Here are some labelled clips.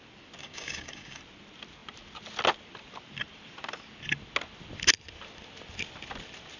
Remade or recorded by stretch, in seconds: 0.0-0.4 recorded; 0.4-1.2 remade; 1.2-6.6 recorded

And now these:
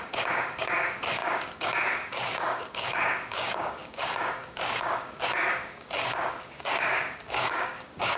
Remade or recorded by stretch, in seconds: 0.0-8.2 remade

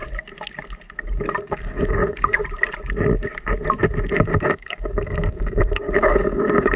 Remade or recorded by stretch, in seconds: 0.0-1.4 recorded; 1.4-2.4 remade; 2.4-4.1 recorded; 4.1-6.8 remade

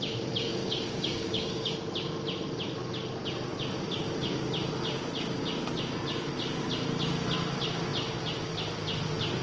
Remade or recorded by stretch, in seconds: 0.0-0.6 recorded; 0.6-1.7 remade; 1.7-9.4 recorded

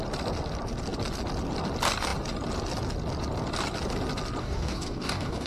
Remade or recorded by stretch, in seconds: 0.0-4.4 recorded; 4.4-5.5 remade

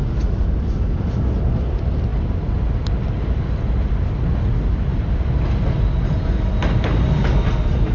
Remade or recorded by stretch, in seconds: 0.0-7.9 recorded

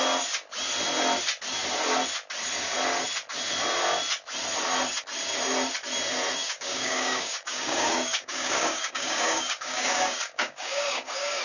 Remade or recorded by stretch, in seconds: 0.0-6.4 recorded; 6.4-11.4 remade